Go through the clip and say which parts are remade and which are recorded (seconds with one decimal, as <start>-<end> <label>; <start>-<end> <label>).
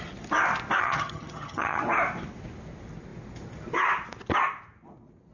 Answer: 0.0-0.8 recorded; 0.8-1.8 remade; 1.8-5.3 recorded